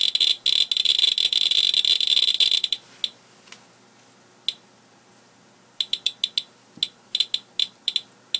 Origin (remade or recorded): recorded